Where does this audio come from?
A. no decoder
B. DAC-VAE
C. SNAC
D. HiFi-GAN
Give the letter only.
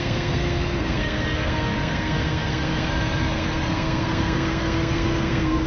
C